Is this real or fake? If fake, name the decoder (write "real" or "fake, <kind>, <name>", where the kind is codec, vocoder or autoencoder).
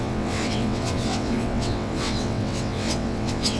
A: fake, vocoder, WaveNeXt